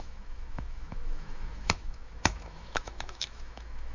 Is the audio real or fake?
fake